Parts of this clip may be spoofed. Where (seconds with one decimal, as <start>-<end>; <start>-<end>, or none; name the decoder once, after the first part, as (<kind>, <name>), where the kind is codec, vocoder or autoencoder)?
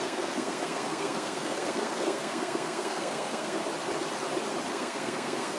0.0-3.6 (codec, SNAC); 4.7-5.6